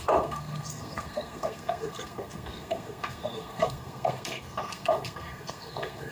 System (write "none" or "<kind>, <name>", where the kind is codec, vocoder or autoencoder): codec, SNAC